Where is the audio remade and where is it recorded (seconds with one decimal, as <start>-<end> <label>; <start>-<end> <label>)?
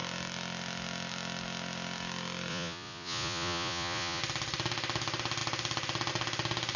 0.0-2.5 recorded; 2.5-4.2 remade; 4.2-6.8 recorded